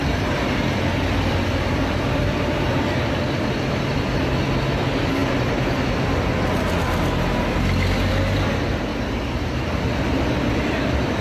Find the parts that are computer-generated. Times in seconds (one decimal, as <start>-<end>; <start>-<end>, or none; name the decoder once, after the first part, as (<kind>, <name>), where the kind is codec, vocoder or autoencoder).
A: 0.0-4.1 (vocoder, BigVGAN v2)